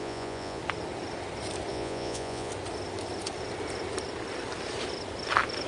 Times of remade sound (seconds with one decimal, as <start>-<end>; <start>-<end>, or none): 0.0-0.6; 1.7-2.5